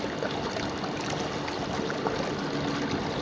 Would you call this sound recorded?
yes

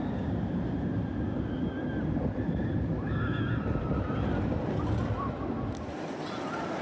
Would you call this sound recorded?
yes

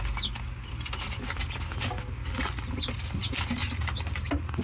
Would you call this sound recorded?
yes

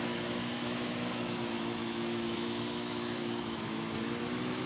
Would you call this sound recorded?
no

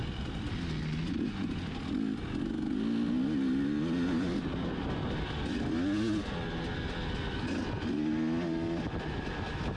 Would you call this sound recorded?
yes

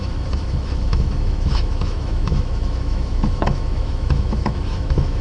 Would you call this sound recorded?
no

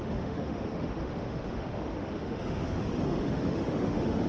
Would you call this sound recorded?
no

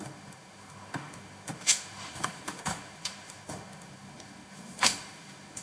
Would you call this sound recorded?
no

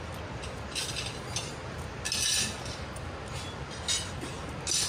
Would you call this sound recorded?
yes